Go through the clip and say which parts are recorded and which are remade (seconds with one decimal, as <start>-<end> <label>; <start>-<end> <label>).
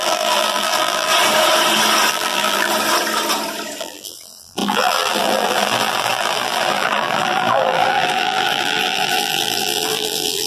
0.0-1.1 remade; 1.1-2.1 recorded; 2.1-2.7 remade; 2.7-3.8 recorded; 3.8-10.5 remade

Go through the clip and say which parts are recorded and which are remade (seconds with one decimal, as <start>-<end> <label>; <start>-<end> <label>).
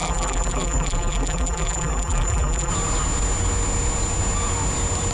0.0-2.7 remade; 2.7-5.1 recorded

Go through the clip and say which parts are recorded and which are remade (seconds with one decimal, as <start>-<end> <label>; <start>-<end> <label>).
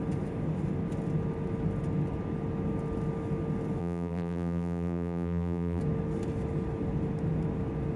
0.0-3.8 recorded; 3.8-5.8 remade; 5.8-8.0 recorded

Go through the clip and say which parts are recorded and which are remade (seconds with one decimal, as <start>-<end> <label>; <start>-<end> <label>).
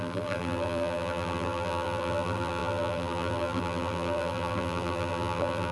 0.0-5.7 remade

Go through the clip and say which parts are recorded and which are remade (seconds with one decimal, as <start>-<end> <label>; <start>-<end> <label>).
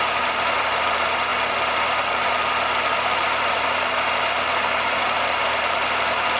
0.0-6.4 remade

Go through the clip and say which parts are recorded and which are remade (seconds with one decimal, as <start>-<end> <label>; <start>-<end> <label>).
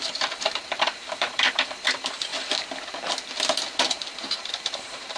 0.0-2.3 remade; 2.3-3.9 recorded; 3.9-5.2 remade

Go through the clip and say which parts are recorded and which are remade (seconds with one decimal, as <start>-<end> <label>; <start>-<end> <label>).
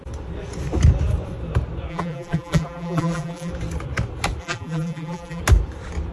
0.0-1.9 recorded; 1.9-3.5 remade; 3.5-4.4 recorded; 4.4-5.4 remade; 5.4-6.1 recorded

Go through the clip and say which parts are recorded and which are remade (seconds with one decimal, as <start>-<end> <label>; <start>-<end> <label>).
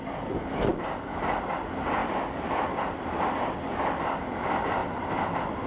0.0-4.8 recorded; 4.8-5.3 remade; 5.3-5.7 recorded